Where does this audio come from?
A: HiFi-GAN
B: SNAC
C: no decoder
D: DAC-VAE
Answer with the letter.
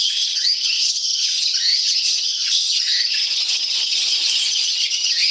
A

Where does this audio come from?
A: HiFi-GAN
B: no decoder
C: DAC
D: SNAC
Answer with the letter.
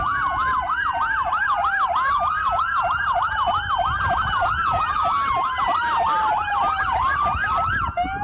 B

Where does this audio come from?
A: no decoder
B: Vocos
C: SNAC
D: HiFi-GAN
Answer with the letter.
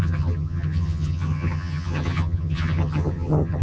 D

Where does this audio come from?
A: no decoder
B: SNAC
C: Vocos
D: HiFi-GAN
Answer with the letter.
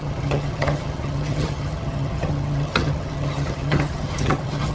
D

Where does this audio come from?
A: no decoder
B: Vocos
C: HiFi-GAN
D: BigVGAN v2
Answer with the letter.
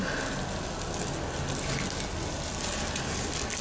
A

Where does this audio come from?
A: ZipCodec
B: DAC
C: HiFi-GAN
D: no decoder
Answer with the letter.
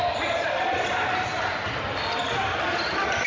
D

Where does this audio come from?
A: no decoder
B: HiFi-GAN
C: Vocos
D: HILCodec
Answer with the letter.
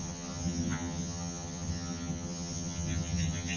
B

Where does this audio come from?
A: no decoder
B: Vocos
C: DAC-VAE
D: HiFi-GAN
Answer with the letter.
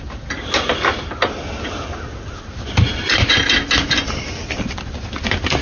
A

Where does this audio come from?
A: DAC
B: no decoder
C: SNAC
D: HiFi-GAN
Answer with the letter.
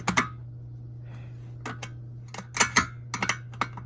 B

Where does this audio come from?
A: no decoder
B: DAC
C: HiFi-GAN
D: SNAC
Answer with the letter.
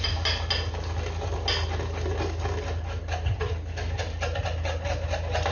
A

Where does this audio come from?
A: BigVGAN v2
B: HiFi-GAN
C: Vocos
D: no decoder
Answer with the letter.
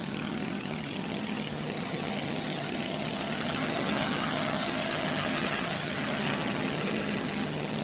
B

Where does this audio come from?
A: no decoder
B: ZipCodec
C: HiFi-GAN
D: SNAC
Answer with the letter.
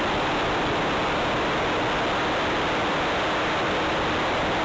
A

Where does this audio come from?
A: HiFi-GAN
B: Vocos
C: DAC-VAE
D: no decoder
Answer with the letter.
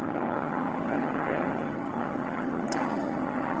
A